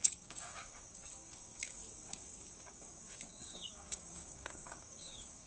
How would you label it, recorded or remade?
remade